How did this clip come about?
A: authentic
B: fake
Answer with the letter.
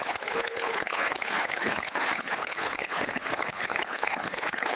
B